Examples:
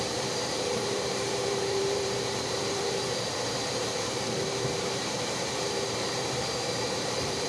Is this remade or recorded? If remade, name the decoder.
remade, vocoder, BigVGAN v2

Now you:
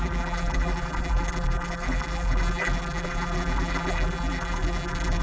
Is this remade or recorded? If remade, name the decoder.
remade, vocoder, BigVGAN v2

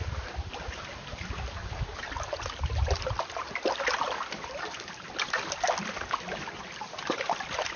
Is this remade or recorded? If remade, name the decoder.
recorded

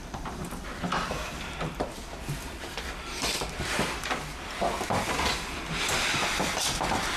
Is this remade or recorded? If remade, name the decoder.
remade, vocoder, BigVGAN v2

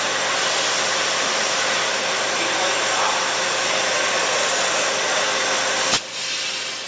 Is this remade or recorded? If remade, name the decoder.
recorded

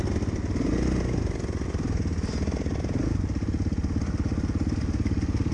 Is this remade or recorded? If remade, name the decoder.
recorded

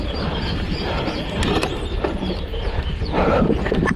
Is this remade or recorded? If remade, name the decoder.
remade, vocoder, BigVGAN v2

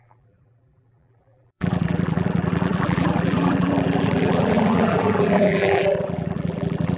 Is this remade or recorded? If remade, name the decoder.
remade, vocoder, BigVGAN v2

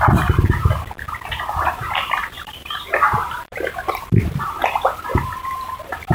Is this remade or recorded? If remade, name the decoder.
remade, vocoder, BigVGAN v2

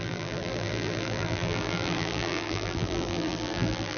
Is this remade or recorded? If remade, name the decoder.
remade, vocoder, BigVGAN v2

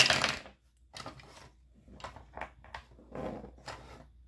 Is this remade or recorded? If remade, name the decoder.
recorded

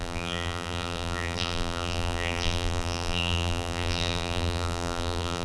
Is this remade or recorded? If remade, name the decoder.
remade, vocoder, BigVGAN v2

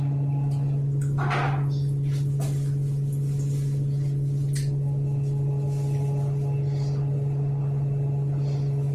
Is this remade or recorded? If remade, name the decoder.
recorded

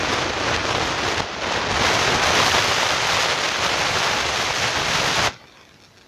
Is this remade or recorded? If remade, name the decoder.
recorded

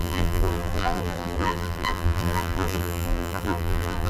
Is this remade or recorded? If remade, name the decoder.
remade, vocoder, BigVGAN v2